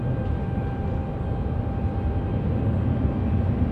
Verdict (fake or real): real